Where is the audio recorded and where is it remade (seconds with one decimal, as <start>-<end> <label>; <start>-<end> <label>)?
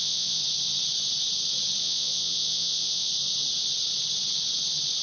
0.0-0.4 remade; 0.4-1.8 recorded; 1.8-3.1 remade; 3.1-5.0 recorded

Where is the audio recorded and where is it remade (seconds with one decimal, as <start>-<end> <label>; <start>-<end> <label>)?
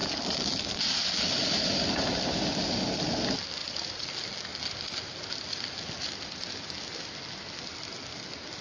0.0-2.7 remade; 2.7-3.6 recorded; 3.6-4.1 remade; 4.1-8.6 recorded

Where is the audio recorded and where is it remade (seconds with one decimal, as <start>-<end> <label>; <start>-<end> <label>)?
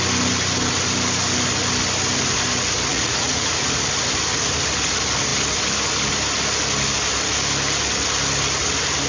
0.0-2.9 recorded; 2.9-3.6 remade; 3.6-9.1 recorded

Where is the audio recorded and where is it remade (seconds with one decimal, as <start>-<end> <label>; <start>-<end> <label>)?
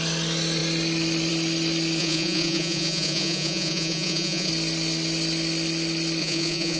0.0-2.0 recorded; 2.0-4.5 remade; 4.5-6.2 recorded; 6.2-6.8 remade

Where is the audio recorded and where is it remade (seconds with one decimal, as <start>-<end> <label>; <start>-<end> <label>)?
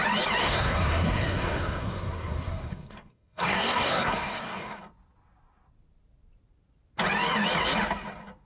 0.0-0.4 recorded; 0.4-4.8 remade; 4.8-8.5 recorded